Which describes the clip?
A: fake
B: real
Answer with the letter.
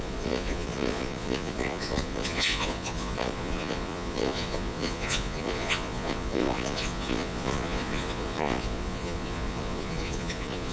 A